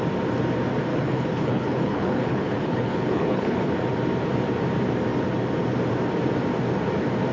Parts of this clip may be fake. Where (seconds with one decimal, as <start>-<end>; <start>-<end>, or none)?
0.9-3.7